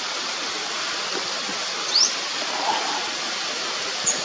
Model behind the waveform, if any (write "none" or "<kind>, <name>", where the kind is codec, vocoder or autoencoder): none